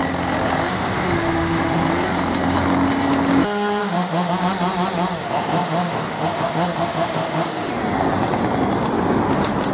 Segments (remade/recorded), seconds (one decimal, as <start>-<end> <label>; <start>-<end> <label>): 0.0-0.7 recorded; 0.7-1.8 remade; 1.8-3.8 recorded; 3.8-4.3 remade; 4.3-5.2 recorded; 5.2-7.7 remade; 7.7-9.7 recorded